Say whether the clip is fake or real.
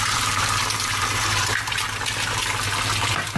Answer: fake